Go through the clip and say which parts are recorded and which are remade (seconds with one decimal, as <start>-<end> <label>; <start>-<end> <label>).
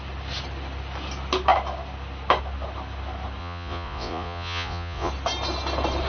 0.0-3.4 recorded; 3.4-5.1 remade; 5.1-6.1 recorded